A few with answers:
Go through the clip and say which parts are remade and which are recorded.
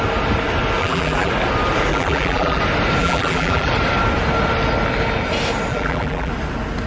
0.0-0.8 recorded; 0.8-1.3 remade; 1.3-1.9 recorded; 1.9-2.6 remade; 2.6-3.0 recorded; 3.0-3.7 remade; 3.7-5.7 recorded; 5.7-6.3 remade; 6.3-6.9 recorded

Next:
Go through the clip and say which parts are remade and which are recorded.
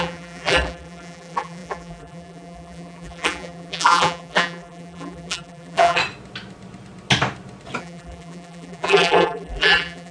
0.0-6.0 remade; 6.0-7.8 recorded; 7.8-10.1 remade